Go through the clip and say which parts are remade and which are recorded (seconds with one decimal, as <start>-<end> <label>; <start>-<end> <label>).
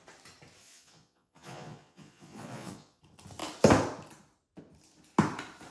0.0-0.6 recorded; 0.6-3.0 remade; 3.0-5.7 recorded